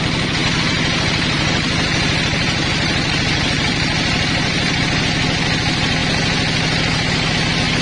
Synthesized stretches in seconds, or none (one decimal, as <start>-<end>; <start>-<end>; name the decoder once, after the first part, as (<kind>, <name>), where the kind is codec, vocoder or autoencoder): 0.4-4.8 (vocoder, BigVGAN v2)